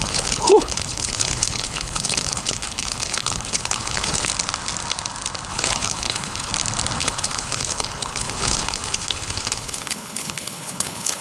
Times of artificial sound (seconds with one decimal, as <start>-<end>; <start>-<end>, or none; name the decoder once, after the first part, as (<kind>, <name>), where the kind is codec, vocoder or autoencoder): 0.0-4.3 (codec, HILCodec); 5.5-6.5; 7.0-11.2